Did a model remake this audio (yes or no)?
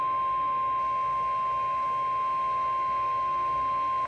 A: no